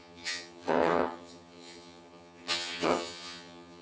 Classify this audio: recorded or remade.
remade